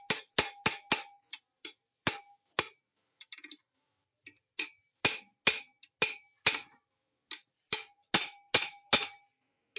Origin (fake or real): real